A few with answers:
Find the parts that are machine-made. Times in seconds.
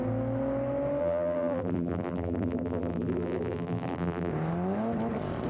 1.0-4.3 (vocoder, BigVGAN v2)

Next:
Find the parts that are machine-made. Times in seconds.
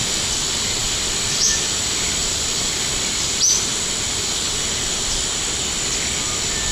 2.2-2.8 (vocoder, BigVGAN v2)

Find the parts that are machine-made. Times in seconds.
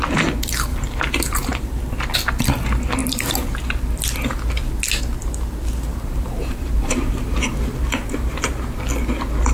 0.7-1.8 (vocoder, BigVGAN v2); 5.9-8.4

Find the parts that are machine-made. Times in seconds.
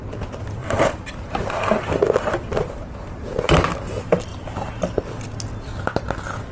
0.6-1.8 (vocoder, BigVGAN v2); 2.5-3.3; 4.3-4.8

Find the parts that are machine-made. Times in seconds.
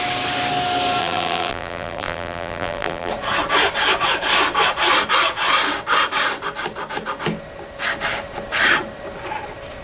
1.0-3.1 (vocoder, BigVGAN v2)